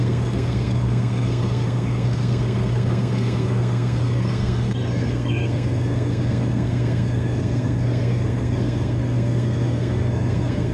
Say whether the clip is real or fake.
fake